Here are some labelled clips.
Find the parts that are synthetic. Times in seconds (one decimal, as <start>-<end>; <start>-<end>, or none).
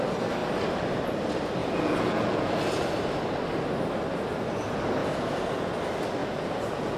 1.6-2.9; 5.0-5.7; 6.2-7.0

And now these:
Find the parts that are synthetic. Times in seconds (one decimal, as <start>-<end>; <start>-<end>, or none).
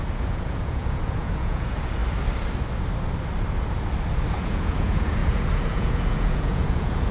0.0-2.0; 4.3-7.1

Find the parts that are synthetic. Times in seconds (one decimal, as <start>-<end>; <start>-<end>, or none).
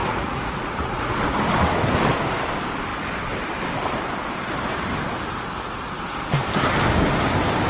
0.0-1.2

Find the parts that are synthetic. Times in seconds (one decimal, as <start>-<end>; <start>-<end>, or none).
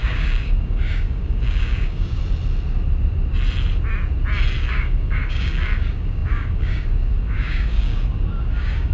0.0-2.2; 4.6-8.9